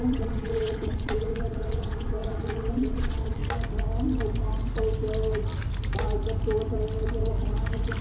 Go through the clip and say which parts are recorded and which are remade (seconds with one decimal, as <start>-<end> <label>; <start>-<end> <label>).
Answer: 0.0-3.4 remade; 3.4-8.0 recorded